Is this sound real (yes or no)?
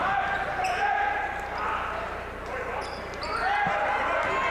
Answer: yes